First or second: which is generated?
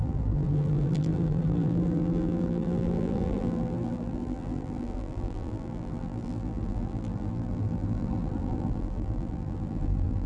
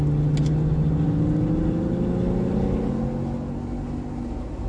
first